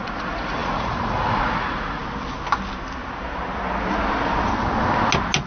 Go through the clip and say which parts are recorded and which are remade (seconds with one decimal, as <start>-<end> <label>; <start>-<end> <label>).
0.0-2.0 remade; 2.0-5.5 recorded